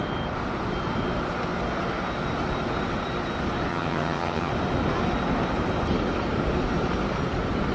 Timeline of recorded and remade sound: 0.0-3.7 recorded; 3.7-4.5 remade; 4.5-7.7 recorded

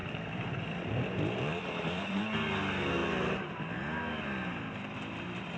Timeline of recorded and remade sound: 0.0-2.2 remade; 2.2-3.0 recorded; 3.0-3.7 remade; 3.7-5.6 recorded

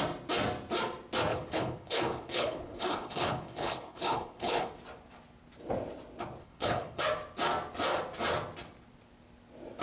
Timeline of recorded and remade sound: 0.0-1.3 recorded; 1.3-4.7 remade; 4.7-6.4 recorded; 6.4-7.0 remade; 7.0-9.8 recorded

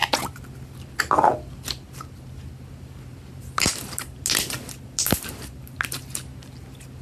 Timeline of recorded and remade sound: 0.0-7.0 recorded

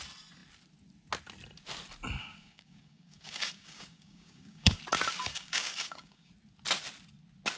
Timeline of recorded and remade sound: 0.0-2.2 recorded; 2.2-4.8 remade; 4.8-5.2 recorded; 5.2-6.3 remade; 6.3-7.6 recorded